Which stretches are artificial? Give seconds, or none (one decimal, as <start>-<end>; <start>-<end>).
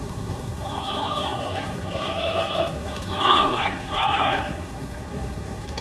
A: 0.0-5.8